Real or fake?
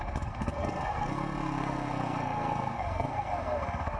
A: fake